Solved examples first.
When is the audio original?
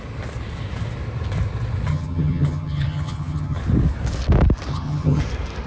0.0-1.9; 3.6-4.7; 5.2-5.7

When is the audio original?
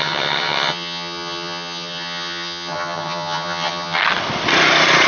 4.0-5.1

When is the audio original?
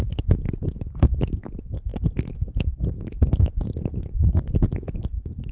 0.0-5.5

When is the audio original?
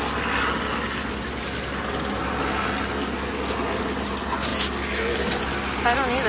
0.0-6.3